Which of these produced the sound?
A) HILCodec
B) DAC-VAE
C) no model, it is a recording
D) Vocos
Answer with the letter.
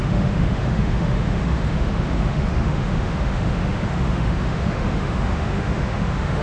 B